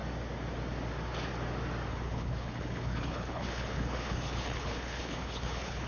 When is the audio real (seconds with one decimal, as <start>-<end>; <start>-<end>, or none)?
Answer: 0.0-1.9